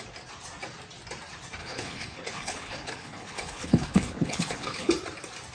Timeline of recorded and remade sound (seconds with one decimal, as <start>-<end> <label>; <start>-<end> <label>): 0.0-1.6 recorded; 1.6-4.9 remade; 4.9-5.5 recorded